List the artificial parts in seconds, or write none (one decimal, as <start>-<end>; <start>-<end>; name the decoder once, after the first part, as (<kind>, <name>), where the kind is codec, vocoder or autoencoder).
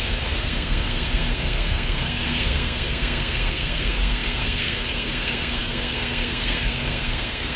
0.0-7.6 (codec, SNAC)